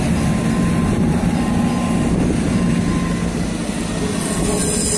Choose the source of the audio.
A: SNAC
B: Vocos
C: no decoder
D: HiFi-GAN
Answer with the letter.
C